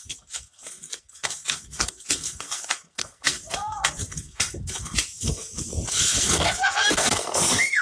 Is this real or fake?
fake